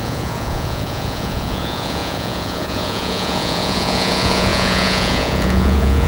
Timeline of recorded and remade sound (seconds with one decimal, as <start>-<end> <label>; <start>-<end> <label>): 0.0-6.1 remade